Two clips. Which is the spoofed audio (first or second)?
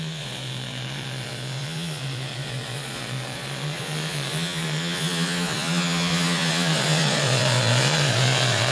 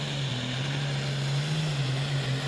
first